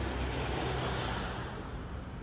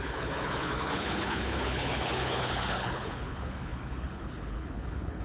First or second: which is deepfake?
second